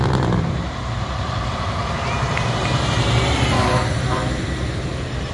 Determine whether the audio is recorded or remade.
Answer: remade